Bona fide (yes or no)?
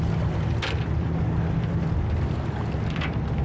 yes